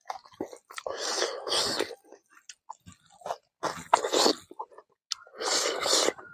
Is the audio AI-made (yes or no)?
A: no